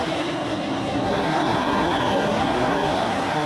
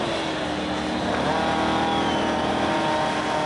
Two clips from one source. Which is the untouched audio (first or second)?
second